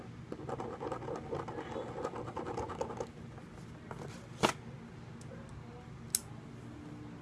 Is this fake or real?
real